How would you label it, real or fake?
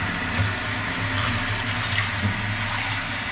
real